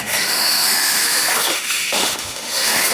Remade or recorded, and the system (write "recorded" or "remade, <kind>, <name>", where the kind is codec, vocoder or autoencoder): remade, autoencoder, DAC-VAE